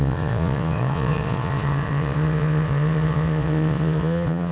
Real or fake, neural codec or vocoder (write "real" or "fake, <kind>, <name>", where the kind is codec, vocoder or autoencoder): fake, vocoder, Vocos